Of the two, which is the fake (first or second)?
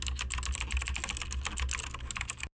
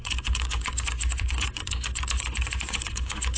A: second